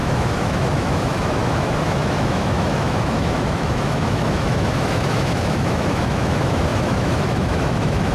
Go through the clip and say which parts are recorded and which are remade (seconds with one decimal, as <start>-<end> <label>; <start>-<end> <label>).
0.0-8.1 remade